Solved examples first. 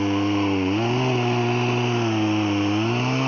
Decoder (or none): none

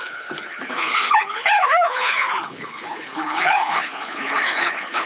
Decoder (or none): codec, HILCodec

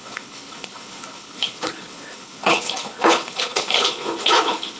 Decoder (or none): codec, HILCodec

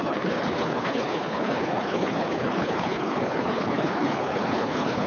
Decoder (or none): codec, HILCodec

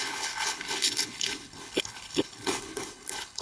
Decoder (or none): codec, HILCodec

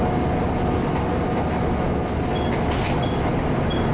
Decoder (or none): none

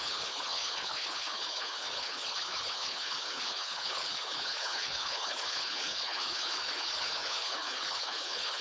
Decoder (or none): codec, HILCodec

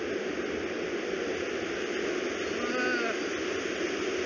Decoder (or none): none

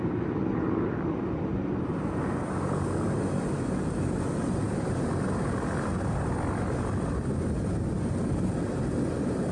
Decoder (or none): none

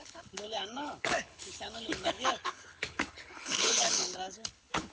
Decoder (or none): codec, HILCodec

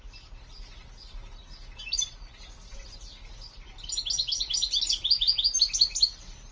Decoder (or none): none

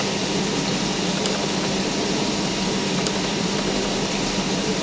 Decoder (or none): none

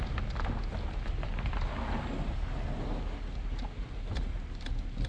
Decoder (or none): none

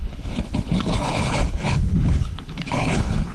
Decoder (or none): codec, HILCodec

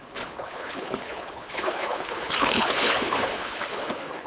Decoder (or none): codec, HILCodec